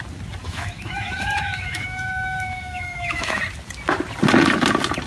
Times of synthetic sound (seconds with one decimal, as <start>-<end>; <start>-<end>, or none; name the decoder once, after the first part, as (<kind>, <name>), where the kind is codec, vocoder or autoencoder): 0.4-3.4 (autoencoder, DAC-VAE)